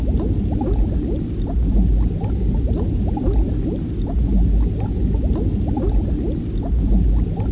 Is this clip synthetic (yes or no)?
no